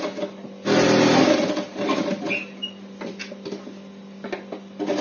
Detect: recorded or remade recorded